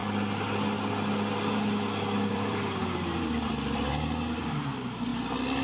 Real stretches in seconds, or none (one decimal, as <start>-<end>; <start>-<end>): 0.0-2.3; 5.1-5.6